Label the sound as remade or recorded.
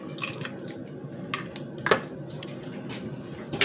recorded